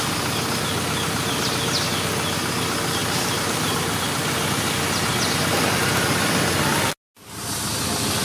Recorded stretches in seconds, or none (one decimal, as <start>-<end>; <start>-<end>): 0.0-3.0; 6.5-8.2